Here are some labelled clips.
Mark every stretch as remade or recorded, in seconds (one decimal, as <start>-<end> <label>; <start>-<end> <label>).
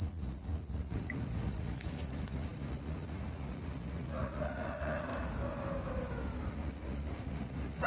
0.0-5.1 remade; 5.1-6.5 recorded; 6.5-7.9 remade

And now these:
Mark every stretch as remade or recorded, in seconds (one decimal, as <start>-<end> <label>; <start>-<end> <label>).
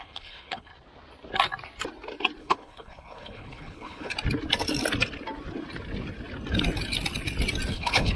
0.0-0.7 remade; 0.7-2.4 recorded; 2.4-4.1 remade; 4.1-7.7 recorded; 7.7-8.2 remade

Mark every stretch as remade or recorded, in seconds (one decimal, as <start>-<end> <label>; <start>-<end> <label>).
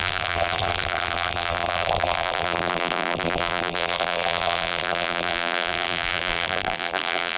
0.0-7.4 remade